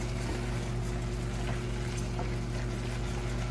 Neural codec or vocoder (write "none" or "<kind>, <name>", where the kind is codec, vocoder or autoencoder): none